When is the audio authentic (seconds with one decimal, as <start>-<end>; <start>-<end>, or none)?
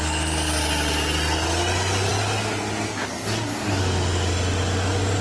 0.0-5.2